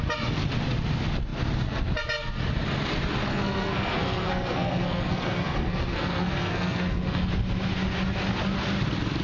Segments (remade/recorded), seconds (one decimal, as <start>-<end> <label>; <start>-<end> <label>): 0.0-3.3 recorded; 3.3-7.3 remade; 7.3-9.2 recorded